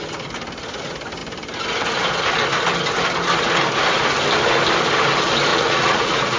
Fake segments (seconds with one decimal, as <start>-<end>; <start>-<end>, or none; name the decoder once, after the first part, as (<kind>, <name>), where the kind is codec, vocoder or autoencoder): 5.5-6.4 (vocoder, Vocos)